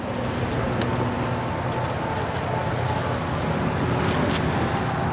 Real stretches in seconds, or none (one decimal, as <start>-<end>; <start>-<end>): 0.0-5.1

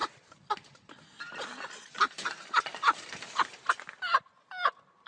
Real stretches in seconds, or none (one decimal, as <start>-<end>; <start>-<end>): 0.0-5.1